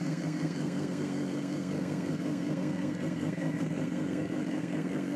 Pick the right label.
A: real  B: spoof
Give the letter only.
B